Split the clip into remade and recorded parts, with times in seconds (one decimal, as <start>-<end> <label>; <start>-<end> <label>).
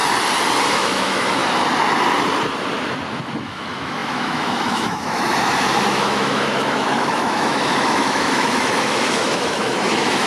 0.0-0.7 recorded; 0.7-1.4 remade; 1.4-3.4 recorded; 3.4-10.3 remade